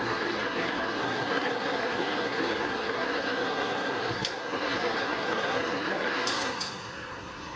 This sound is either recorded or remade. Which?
remade